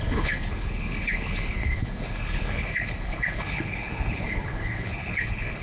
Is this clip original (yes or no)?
no